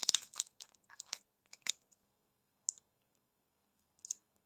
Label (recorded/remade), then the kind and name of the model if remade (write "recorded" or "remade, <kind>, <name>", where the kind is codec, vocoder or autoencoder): remade, codec, SNAC